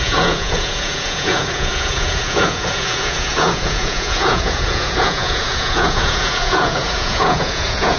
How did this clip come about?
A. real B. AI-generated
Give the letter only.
B